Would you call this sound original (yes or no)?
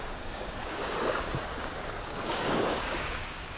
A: no